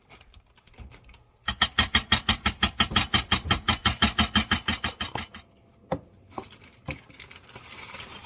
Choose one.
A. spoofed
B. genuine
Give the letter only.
B